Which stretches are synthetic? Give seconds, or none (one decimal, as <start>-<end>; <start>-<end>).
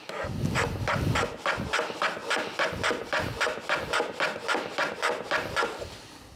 none